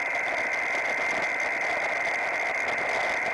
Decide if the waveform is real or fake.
real